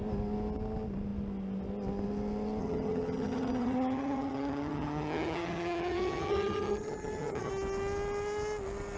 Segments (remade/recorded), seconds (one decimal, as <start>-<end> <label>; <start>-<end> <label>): 0.0-2.6 recorded; 2.6-7.5 remade; 7.5-9.0 recorded